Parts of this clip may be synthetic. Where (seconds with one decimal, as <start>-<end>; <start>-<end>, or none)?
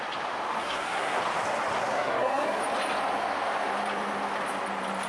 0.6-1.2; 1.8-2.6